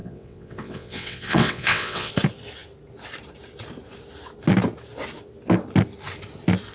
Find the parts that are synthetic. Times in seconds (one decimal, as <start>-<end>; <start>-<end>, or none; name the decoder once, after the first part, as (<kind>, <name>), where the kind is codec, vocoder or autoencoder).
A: 0.0-2.1 (vocoder, WaveNeXt)